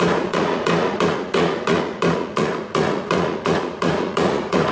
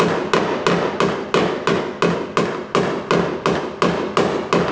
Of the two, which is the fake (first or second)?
first